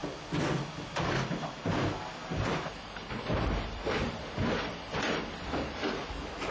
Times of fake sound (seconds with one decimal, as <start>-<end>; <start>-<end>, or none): 0.0-1.6; 2.2-6.1